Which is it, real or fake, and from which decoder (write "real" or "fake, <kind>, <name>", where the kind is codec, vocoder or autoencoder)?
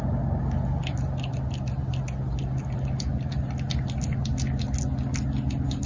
real